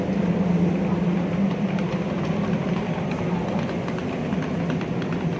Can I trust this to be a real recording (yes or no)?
yes